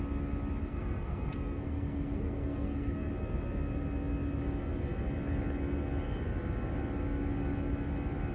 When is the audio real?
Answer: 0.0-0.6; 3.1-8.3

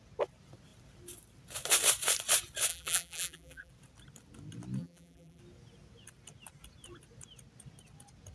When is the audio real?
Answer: 0.0-2.7; 3.7-4.8; 5.4-8.3

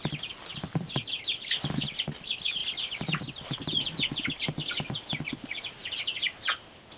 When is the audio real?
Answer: 0.0-7.0